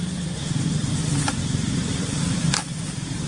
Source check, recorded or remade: remade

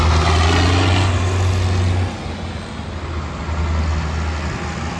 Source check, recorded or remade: recorded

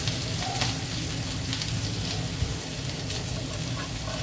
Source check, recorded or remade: recorded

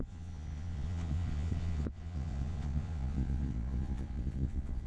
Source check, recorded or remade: remade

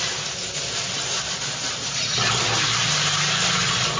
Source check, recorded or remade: recorded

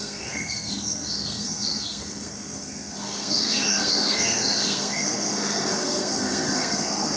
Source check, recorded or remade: remade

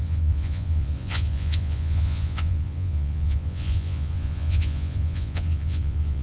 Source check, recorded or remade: remade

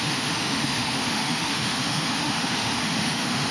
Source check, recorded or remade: remade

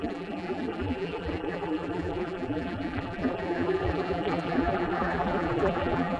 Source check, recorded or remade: remade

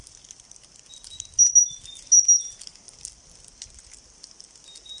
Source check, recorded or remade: recorded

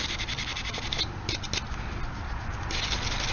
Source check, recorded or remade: recorded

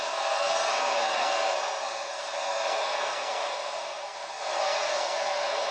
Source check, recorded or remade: remade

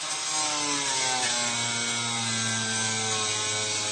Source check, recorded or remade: recorded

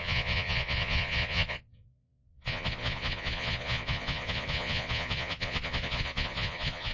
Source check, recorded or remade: remade